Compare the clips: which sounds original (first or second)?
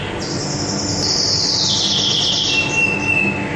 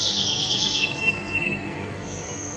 first